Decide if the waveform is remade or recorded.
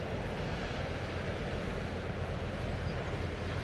recorded